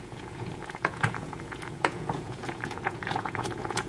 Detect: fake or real fake